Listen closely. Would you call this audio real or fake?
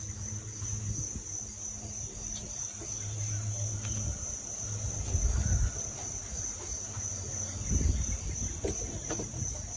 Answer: real